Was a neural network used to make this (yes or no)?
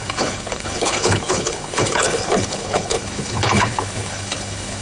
yes